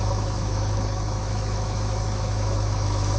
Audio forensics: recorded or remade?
remade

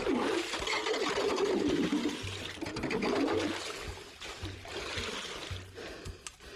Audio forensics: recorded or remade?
recorded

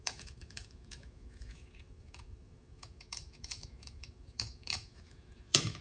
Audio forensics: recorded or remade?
remade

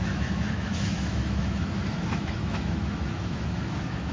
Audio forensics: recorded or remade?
remade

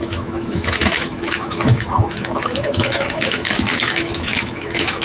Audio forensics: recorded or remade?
remade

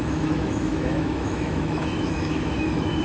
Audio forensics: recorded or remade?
remade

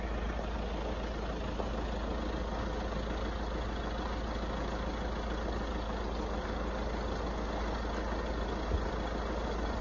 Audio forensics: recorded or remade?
recorded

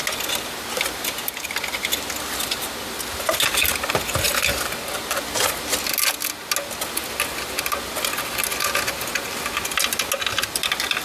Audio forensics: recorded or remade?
recorded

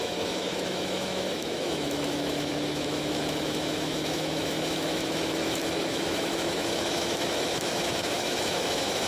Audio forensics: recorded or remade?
remade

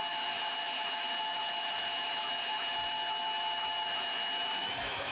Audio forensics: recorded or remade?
remade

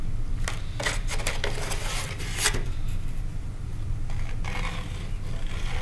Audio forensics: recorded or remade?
recorded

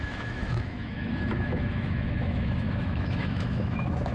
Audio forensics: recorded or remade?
remade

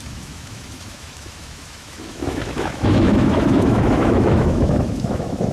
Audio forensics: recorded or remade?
remade